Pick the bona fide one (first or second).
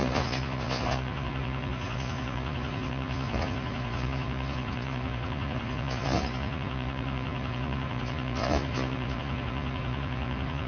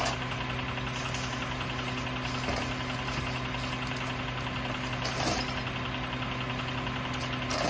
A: second